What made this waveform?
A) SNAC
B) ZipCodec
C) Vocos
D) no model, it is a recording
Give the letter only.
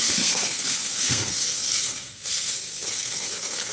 A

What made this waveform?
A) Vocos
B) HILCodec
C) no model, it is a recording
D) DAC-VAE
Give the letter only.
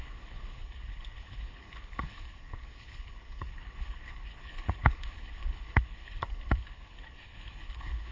B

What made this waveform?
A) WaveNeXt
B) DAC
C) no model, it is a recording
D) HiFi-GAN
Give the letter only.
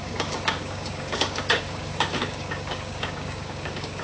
B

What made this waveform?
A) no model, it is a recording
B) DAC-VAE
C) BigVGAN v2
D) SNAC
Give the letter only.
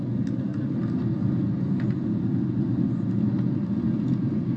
A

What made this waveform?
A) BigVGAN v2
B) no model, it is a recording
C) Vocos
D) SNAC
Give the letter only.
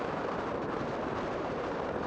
A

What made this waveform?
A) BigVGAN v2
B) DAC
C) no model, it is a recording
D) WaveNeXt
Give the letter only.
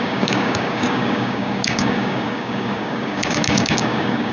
B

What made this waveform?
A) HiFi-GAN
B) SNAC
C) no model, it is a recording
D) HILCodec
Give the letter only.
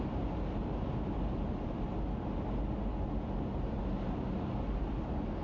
C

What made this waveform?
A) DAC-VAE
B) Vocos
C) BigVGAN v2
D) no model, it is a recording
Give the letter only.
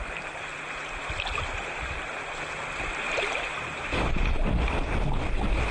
D